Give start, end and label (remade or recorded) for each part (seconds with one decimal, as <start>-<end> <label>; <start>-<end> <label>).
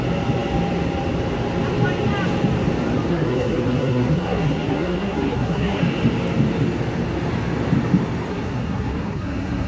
0.0-3.1 recorded; 3.1-5.8 remade; 5.8-8.3 recorded; 8.3-9.7 remade